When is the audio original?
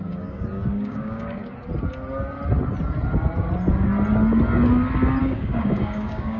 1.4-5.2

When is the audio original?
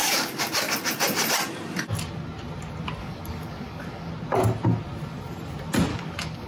0.5-3.0; 4.1-5.9